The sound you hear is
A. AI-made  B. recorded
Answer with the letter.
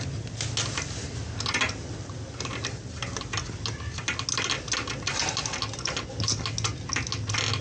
B